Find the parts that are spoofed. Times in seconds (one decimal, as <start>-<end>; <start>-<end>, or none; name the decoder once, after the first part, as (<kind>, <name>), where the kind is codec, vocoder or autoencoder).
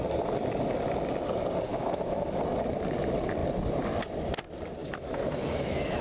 1.7-2.2 (autoencoder, DAC-VAE); 4.8-6.0